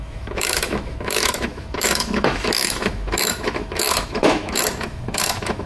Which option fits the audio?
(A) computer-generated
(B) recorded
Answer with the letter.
A